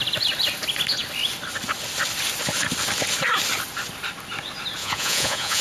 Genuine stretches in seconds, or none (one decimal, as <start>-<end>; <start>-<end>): 0.0-4.8